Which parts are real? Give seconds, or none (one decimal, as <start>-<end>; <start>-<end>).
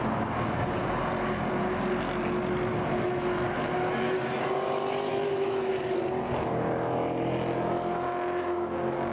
0.0-5.1; 5.7-9.1